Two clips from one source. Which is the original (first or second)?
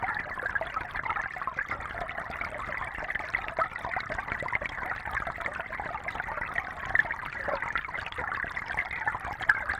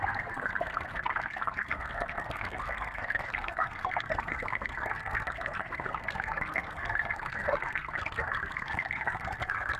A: first